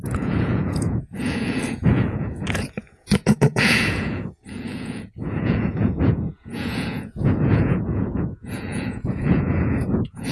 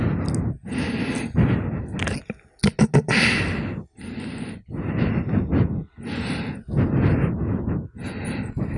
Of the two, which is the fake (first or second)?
first